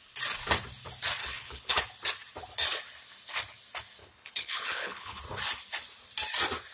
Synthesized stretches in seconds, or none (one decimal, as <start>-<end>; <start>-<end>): 1.2-1.8; 4.0-5.2